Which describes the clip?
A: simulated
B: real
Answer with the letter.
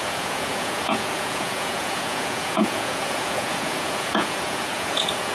A